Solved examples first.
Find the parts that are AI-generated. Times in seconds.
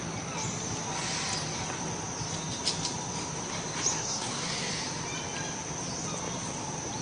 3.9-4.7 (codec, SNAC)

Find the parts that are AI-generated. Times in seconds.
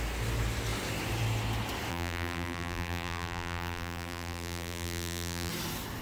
1.9-5.5 (vocoder, BigVGAN v2)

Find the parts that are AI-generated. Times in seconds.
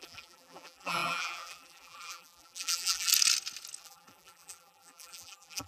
0.0-3.1 (vocoder, BigVGAN v2); 3.8-5.7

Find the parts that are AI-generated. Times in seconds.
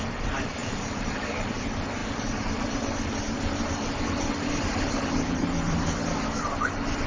0.0-7.1 (vocoder, BigVGAN v2)